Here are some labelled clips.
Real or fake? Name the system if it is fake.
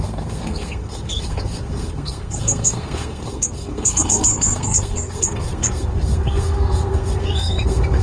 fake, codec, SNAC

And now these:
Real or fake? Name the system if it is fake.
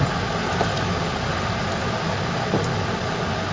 real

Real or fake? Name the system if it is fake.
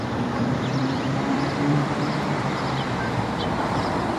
fake, vocoder, BigVGAN v2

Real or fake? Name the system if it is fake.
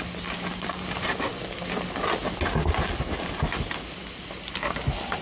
real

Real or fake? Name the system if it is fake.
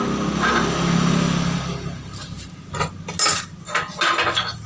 real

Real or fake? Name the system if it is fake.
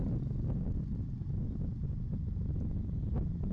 real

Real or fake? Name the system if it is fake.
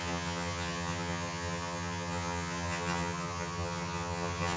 fake, vocoder, HiFi-GAN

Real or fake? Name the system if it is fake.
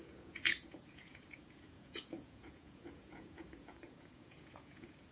fake, vocoder, Vocos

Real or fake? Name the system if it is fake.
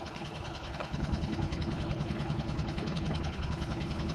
fake, codec, HILCodec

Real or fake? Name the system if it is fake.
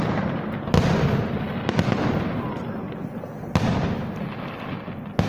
real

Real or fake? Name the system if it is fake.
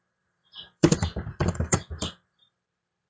fake, vocoder, BigVGAN v2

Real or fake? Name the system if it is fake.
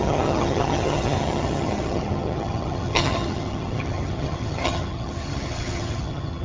fake, vocoder, HiFi-GAN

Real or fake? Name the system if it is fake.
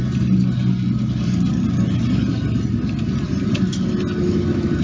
real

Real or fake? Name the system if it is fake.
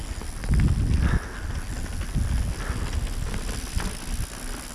real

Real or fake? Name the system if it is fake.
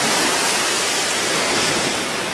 fake, vocoder, BigVGAN v2